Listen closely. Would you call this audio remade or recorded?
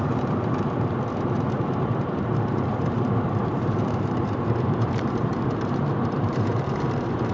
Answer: remade